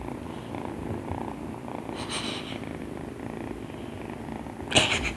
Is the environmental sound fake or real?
real